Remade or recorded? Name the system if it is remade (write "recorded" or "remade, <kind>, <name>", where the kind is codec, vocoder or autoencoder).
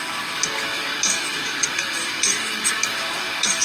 remade, codec, DAC